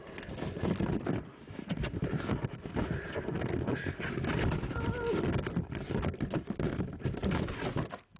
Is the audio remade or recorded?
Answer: recorded